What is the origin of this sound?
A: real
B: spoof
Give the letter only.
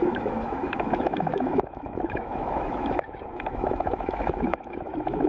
B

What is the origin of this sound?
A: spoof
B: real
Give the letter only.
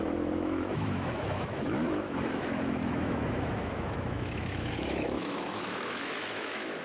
A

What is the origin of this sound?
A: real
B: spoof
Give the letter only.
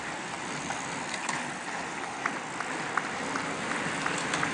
A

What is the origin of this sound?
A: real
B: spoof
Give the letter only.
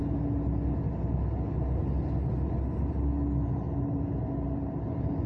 A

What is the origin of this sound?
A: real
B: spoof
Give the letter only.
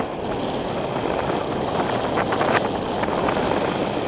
A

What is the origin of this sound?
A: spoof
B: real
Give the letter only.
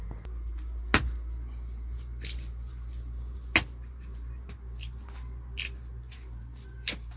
B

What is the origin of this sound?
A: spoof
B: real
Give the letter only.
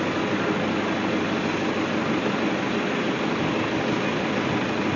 B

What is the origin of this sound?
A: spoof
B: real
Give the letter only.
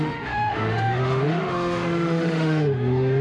A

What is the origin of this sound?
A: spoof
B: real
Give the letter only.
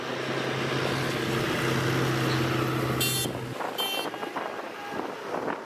B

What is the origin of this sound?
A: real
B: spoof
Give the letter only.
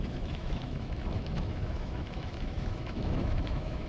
B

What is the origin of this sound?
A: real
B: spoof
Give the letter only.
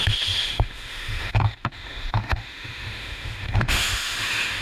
B